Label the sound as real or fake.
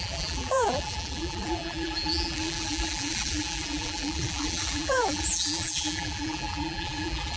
fake